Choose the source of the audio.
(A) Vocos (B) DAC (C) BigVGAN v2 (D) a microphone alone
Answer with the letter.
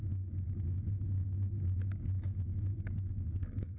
B